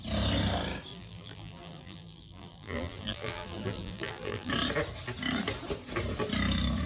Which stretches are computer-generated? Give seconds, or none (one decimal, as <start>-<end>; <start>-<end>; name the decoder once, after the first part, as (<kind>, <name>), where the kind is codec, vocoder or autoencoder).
0.9-4.5 (vocoder, BigVGAN v2)